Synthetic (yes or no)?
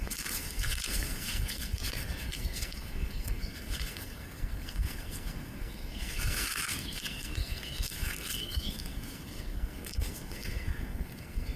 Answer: yes